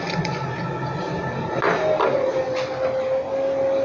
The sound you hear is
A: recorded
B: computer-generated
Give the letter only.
A